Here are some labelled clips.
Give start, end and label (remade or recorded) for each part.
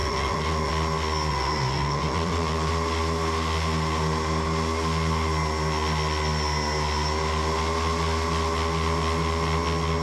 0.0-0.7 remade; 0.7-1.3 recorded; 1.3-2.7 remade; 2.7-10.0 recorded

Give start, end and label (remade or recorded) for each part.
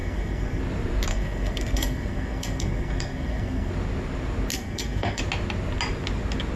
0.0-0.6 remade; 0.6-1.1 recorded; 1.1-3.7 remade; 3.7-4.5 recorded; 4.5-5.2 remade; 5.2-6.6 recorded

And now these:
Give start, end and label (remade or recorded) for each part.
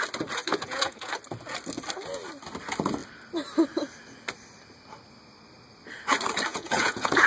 0.0-0.5 recorded; 0.5-1.1 remade; 1.1-6.5 recorded; 6.5-7.3 remade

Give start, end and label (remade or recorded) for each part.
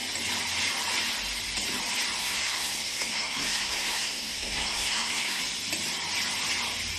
0.0-2.2 recorded; 2.2-5.4 remade; 5.4-7.0 recorded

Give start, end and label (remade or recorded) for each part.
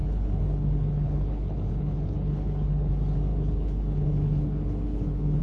0.0-2.9 remade; 2.9-3.3 recorded; 3.3-5.4 remade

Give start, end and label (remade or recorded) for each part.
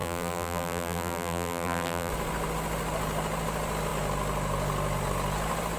0.0-2.1 remade; 2.1-5.8 recorded